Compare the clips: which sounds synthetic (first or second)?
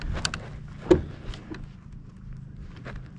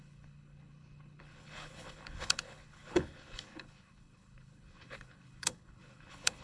second